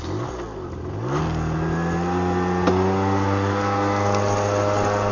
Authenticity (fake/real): real